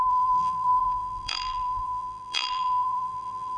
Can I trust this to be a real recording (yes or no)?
no